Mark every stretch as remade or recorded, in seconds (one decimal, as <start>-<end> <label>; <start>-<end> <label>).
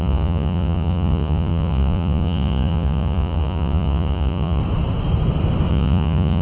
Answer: 0.0-4.6 remade; 4.6-5.7 recorded; 5.7-6.4 remade